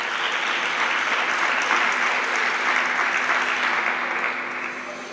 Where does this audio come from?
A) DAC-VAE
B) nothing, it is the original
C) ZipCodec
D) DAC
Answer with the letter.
B